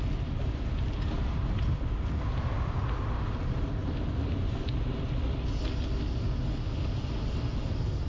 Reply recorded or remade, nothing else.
recorded